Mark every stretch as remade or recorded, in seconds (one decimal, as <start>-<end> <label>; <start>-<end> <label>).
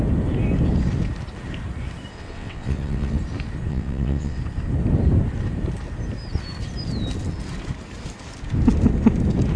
0.0-2.1 recorded; 2.1-3.2 remade; 3.2-3.7 recorded; 3.7-4.4 remade; 4.4-9.6 recorded